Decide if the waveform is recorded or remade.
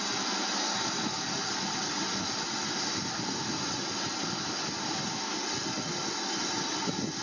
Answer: recorded